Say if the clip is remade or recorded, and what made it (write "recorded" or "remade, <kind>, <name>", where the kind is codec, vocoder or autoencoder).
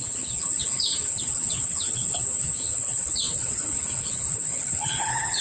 remade, codec, HILCodec